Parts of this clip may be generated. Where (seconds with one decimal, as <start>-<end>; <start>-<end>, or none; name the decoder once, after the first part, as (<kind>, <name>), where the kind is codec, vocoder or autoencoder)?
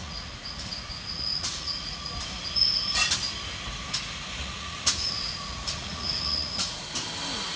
0.0-2.1 (vocoder, Vocos); 4.4-6.8